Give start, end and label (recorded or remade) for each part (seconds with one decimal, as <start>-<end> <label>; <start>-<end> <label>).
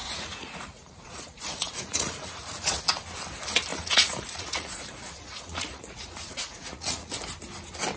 0.0-2.8 remade; 2.8-3.7 recorded; 3.7-7.1 remade; 7.1-8.0 recorded